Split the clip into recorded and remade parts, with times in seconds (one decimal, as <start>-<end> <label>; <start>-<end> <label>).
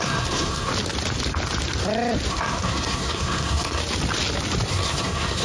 0.0-0.7 remade; 0.7-2.3 recorded; 2.3-3.8 remade; 3.8-4.7 recorded; 4.7-5.4 remade